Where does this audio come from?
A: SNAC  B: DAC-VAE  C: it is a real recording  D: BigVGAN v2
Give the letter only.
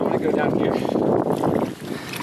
C